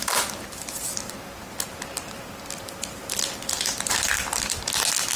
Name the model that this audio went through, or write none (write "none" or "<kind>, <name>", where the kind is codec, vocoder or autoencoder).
none